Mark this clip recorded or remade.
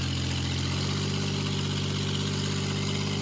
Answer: recorded